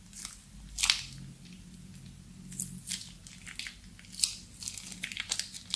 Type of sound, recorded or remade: recorded